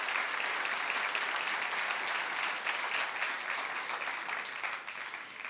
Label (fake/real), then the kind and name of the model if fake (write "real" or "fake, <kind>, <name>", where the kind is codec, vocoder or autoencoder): real